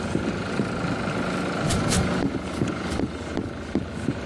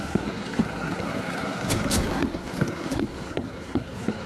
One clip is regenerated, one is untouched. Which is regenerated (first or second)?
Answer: second